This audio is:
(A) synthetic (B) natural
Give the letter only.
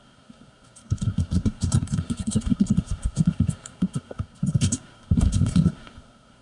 A